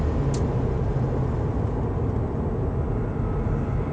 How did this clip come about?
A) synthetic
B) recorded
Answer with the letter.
B